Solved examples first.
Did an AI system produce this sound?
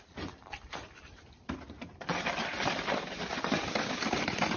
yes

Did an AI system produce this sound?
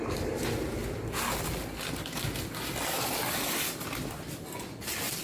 no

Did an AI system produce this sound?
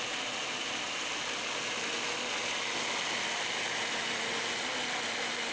no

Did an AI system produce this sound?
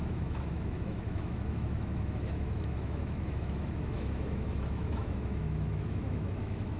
yes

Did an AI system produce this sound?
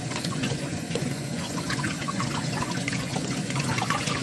yes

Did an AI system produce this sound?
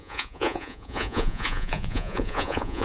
yes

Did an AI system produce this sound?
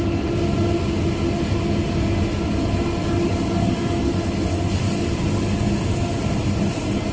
no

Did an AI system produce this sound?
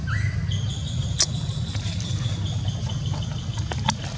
no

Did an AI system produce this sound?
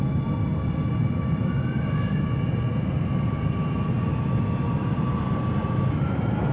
no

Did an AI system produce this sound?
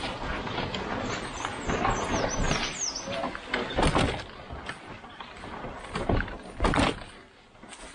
no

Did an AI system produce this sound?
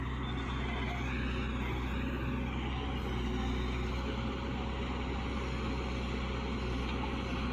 no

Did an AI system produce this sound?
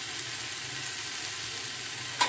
no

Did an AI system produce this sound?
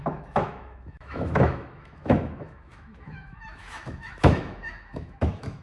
yes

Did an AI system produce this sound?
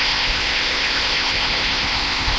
yes